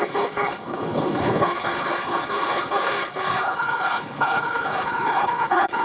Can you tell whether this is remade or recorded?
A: remade